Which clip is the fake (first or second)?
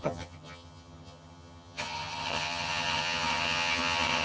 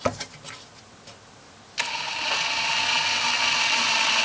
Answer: first